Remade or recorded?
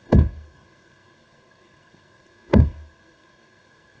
remade